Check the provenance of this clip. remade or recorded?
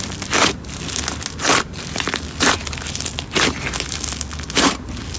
recorded